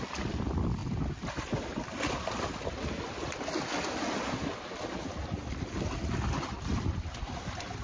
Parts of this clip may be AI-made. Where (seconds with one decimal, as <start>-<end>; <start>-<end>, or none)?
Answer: 6.7-7.8